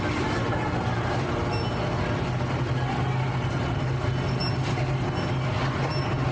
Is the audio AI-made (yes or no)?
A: no